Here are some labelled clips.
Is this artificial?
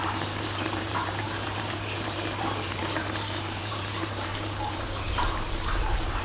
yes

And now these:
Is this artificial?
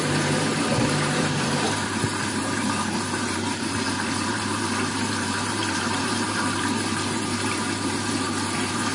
yes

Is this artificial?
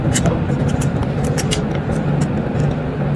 no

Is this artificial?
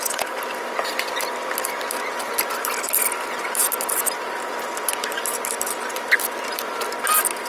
no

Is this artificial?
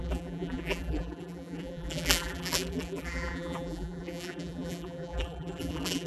yes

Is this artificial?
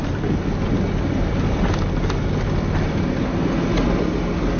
no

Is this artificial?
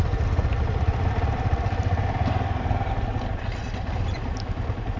no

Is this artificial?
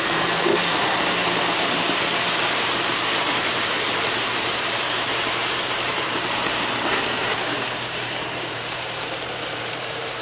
yes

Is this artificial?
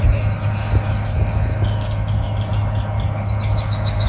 no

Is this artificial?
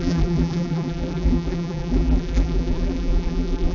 yes